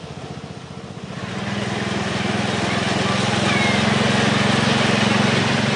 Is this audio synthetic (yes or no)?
no